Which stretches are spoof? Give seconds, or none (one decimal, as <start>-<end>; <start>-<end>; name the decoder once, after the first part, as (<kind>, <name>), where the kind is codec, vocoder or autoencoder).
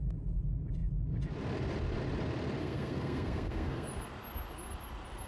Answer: 2.6-3.9 (codec, SNAC)